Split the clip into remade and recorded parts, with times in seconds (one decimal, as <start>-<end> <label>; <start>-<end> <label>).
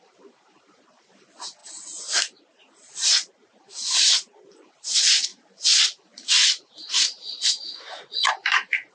0.0-8.9 remade